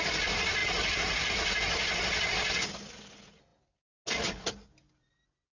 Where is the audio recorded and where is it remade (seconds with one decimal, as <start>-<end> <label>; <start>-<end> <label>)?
0.0-5.6 recorded